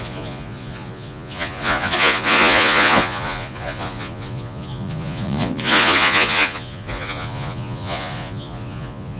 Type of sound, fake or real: fake